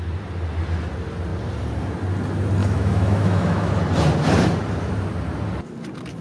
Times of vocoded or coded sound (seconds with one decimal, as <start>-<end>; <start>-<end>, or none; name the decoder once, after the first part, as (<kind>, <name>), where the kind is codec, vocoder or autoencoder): 2.6-3.7 (autoencoder, DAC-VAE)